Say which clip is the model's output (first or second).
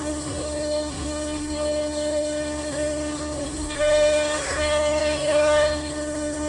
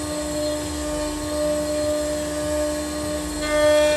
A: first